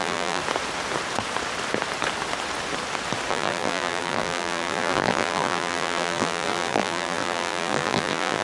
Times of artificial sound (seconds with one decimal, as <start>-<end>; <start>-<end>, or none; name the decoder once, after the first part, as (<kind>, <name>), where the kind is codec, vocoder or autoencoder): 0.0-0.4 (vocoder, BigVGAN v2); 3.3-8.4